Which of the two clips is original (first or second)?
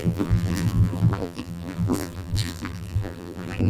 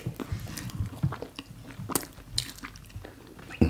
second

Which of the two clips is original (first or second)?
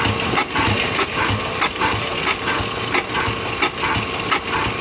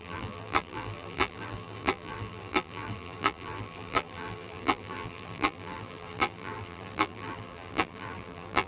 first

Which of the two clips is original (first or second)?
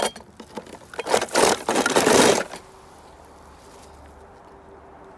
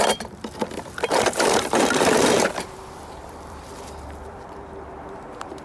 first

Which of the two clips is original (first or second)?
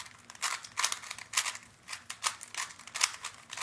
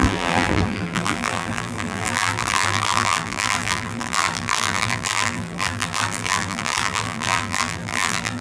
first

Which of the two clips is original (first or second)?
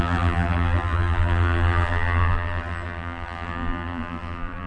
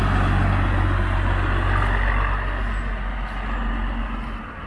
second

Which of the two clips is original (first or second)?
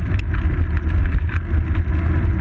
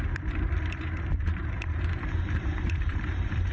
first